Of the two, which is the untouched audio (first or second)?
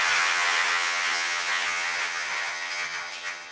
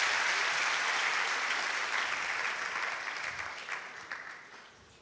second